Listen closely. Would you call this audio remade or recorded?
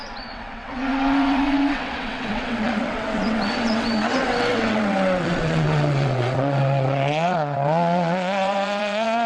remade